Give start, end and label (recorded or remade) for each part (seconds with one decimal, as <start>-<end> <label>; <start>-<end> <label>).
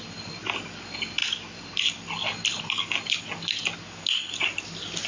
0.0-5.1 recorded